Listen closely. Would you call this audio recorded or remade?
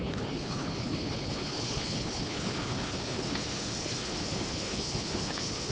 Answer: remade